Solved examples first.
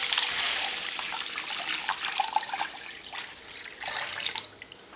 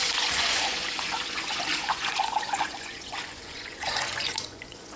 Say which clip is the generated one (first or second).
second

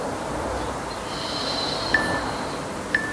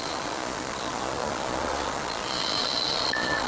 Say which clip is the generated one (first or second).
second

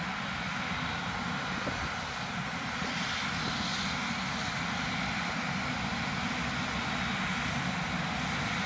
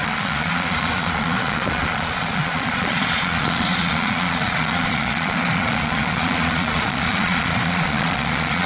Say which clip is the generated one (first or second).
second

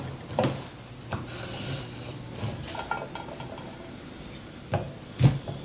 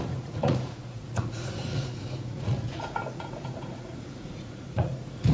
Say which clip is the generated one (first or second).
second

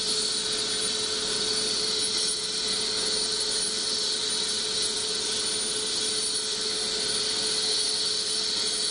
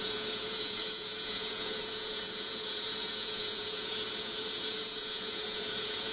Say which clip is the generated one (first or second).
second